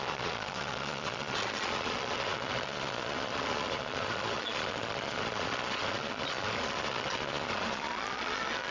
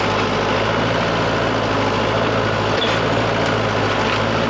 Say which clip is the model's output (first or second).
first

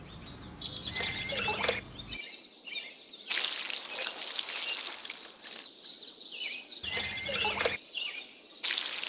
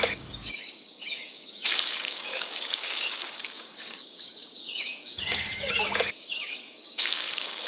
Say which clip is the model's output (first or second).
second